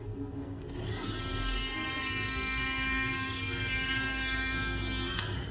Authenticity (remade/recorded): remade